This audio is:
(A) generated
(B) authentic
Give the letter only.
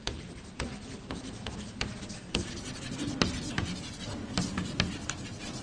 A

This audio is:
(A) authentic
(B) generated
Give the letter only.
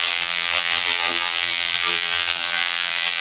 B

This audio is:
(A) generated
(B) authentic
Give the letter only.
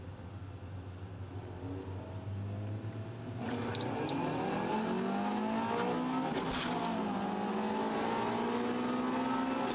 B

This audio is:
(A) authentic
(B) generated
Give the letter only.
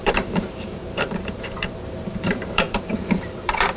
B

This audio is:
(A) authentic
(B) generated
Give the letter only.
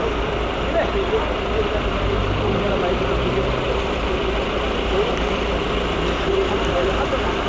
A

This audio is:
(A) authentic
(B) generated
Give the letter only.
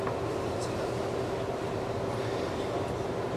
A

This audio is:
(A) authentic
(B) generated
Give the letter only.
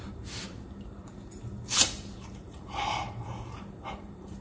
B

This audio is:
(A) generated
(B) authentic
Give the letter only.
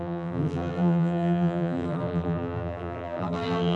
A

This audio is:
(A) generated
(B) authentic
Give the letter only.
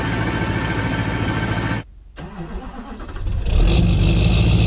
B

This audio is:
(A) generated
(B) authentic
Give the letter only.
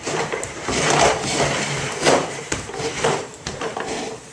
A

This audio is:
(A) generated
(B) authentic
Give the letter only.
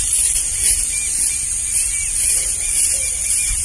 B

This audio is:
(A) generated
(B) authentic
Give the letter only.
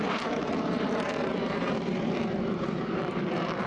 A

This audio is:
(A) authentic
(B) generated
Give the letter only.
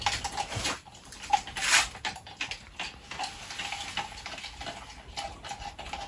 A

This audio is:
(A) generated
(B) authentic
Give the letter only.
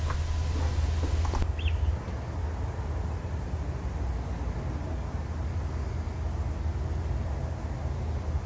B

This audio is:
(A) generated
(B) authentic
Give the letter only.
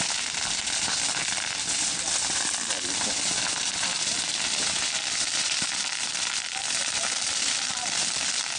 A